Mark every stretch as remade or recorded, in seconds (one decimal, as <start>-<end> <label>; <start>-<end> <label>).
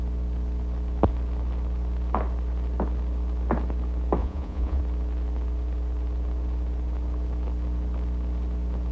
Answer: 0.0-4.2 recorded; 4.2-4.8 remade; 4.8-8.9 recorded